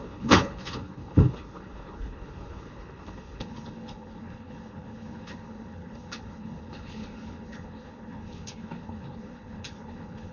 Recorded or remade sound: remade